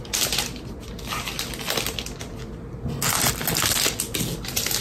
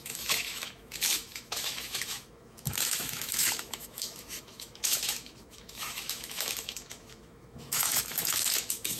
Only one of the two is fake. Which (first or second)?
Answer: second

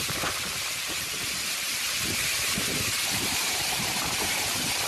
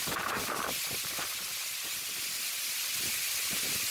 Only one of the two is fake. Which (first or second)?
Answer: first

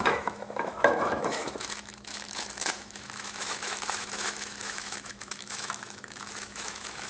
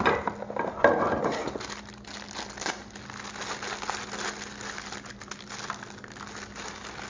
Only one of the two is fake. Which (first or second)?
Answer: first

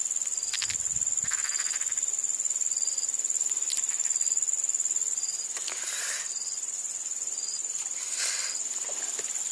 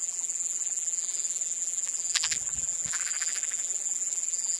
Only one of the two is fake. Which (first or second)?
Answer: second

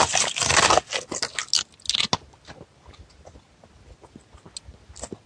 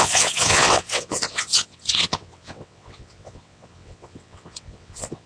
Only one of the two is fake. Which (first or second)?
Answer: second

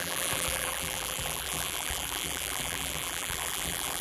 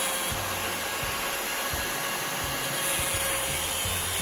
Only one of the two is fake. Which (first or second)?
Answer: first